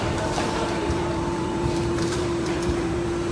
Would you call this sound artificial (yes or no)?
yes